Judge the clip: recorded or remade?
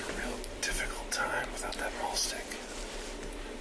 recorded